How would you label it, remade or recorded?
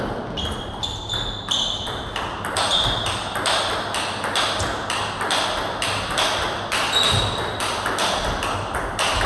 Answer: recorded